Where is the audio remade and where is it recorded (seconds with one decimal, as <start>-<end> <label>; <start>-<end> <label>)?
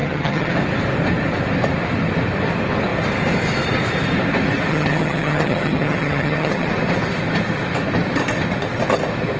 0.0-0.5 remade; 0.5-4.7 recorded; 4.7-6.7 remade; 6.7-9.4 recorded